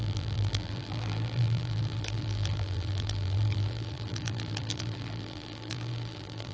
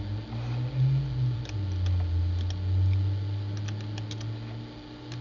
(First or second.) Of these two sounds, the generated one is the first